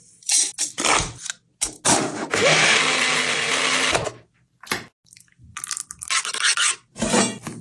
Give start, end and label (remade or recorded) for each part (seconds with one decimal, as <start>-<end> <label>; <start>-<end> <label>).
0.0-1.9 recorded; 1.9-2.8 remade; 2.8-7.6 recorded